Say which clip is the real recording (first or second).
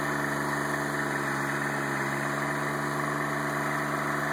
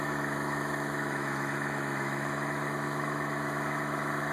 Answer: first